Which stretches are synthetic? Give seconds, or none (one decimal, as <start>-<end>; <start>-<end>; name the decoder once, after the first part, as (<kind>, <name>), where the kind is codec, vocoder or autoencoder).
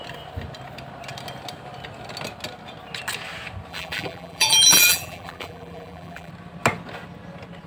3.7-6.3 (vocoder, BigVGAN v2)